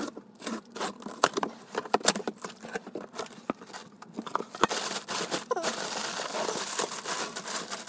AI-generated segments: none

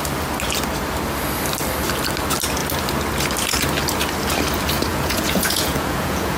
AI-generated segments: 4.9-6.4

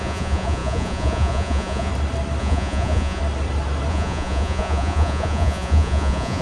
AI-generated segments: 0.0-1.9; 2.4-3.2; 3.9-6.4

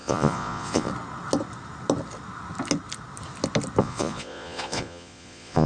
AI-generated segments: 0.0-0.9; 3.8-5.7

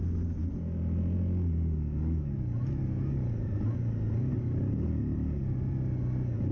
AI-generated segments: none